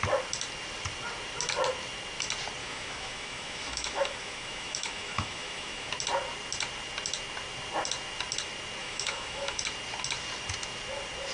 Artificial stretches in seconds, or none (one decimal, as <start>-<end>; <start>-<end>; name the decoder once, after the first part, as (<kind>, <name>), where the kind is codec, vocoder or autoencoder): 2.6-5.9 (autoencoder, DAC-VAE); 8.8-9.6